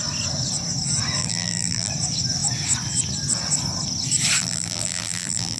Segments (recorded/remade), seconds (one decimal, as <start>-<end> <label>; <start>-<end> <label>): 0.0-1.2 recorded; 1.2-1.9 remade; 1.9-4.4 recorded; 4.4-5.6 remade